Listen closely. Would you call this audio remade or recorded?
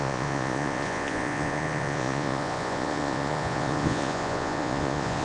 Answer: remade